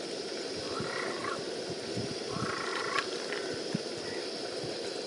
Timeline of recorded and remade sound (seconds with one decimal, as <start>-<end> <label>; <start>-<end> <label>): 0.0-5.1 recorded